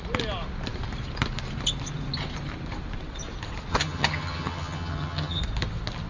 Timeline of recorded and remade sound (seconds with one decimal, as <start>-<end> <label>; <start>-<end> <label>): 0.0-3.7 recorded; 3.7-5.4 remade; 5.4-6.1 recorded